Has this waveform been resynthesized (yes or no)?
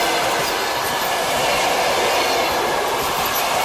no